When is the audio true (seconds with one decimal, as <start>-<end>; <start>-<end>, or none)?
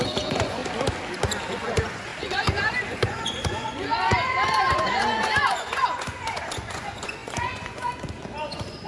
0.6-1.5